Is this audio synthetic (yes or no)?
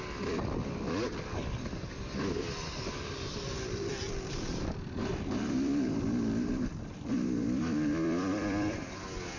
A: yes